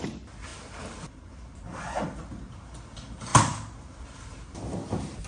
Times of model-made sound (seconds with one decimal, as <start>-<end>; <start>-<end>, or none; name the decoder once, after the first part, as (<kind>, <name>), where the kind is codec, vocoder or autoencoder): 1.7-2.4 (vocoder, BigVGAN v2)